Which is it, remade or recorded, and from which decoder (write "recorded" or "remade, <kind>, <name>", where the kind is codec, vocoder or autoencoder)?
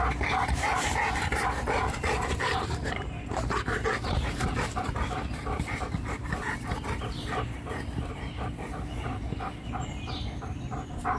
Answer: remade, vocoder, BigVGAN v2